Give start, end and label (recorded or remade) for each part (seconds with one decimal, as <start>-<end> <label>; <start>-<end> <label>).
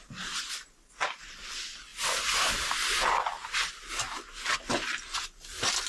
0.0-5.9 recorded